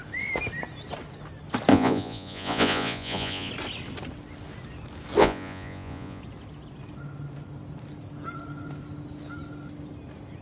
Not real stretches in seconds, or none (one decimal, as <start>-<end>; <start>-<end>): 1.7-3.5; 5.2-6.2